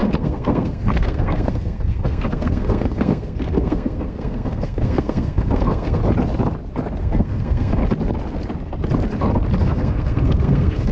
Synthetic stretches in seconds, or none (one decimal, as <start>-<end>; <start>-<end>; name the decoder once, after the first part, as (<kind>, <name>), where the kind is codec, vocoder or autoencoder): 0.0-6.0 (codec, SNAC); 7.0-7.8; 9.6-10.9

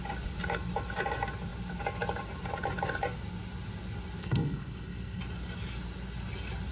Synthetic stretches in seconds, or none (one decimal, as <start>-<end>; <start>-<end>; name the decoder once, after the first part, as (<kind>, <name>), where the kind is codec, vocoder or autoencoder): 4.2-5.2 (codec, SNAC)

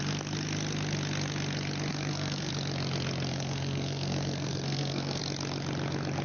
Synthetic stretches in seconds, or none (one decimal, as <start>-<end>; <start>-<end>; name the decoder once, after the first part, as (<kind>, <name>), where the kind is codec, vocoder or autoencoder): 1.9-2.5 (codec, SNAC); 3.3-5.2

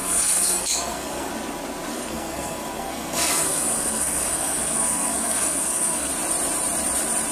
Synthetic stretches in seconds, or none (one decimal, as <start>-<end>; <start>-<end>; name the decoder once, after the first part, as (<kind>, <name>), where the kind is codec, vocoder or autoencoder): 0.0-1.3 (codec, SNAC); 1.9-6.1

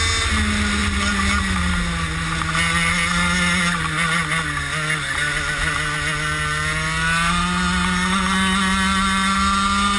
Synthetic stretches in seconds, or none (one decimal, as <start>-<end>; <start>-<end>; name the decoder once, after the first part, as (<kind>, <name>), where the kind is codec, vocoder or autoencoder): none

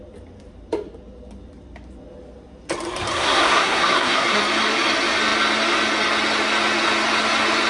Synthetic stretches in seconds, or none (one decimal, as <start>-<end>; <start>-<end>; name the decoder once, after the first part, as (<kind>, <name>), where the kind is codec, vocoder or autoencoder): 3.1-4.4 (codec, SNAC)

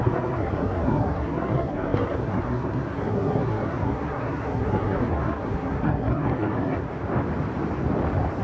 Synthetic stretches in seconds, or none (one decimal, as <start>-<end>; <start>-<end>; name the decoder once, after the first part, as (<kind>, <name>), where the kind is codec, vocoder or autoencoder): 0.0-6.9 (codec, SNAC)

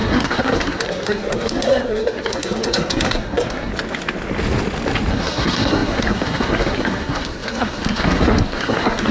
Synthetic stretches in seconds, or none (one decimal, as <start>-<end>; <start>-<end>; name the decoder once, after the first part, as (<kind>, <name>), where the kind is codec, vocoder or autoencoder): 0.0-3.7 (codec, SNAC); 5.1-9.1